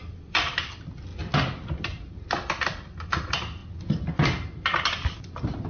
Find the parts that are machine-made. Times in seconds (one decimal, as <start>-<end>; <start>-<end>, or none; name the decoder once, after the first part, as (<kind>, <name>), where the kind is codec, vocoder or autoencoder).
0.0-1.1 (vocoder, BigVGAN v2); 2.5-3.6